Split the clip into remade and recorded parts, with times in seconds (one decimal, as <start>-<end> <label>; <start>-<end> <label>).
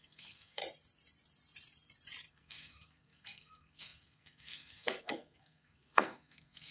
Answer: 0.0-0.6 remade; 0.6-2.3 recorded; 2.3-6.7 remade